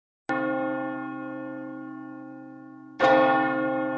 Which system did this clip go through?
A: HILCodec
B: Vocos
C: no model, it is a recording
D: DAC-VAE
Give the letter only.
C